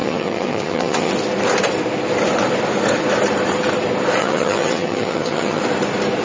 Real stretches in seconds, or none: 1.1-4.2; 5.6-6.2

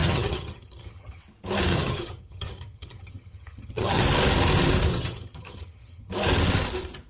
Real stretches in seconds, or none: 1.2-1.7; 4.0-4.9; 6.1-7.1

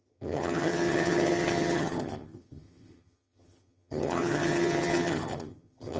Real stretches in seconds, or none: none

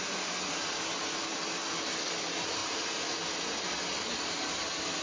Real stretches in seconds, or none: 0.0-5.0

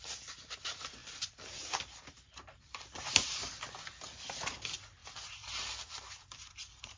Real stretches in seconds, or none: 0.0-7.0

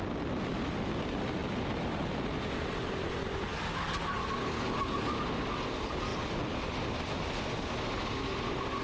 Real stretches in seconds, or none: 0.0-8.8

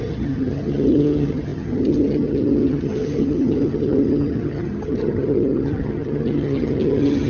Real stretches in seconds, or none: none

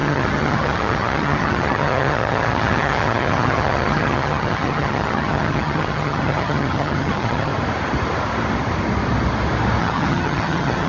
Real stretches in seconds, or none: 7.5-9.8